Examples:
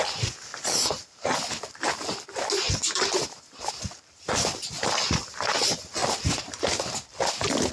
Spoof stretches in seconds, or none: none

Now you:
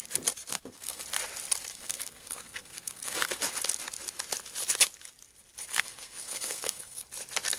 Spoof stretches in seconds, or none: 0.5-1.0; 1.7-3.4; 5.7-7.1

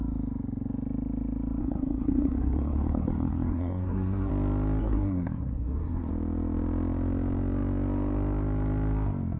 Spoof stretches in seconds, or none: 1.6-4.3; 4.8-6.1

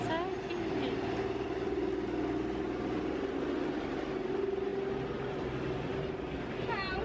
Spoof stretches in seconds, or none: none

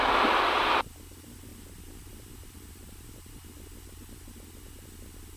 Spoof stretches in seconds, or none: none

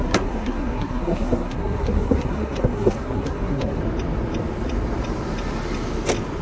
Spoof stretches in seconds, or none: 0.0-3.8